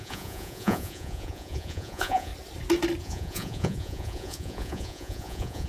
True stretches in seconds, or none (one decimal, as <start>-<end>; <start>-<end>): 2.3-3.0